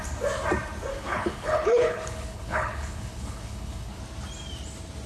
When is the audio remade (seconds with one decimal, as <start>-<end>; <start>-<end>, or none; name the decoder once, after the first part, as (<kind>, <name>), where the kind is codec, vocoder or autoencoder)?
0.9-4.0 (codec, HILCodec)